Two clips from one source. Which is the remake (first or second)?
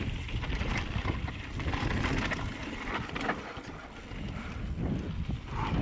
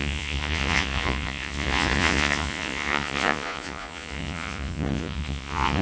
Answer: second